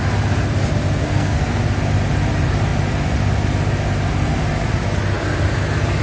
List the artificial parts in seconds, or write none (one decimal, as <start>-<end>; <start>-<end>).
1.0-1.6